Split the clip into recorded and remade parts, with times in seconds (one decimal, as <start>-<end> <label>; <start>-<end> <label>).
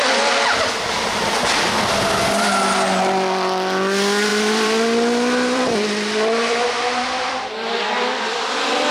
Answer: 0.0-4.3 recorded; 4.3-8.9 remade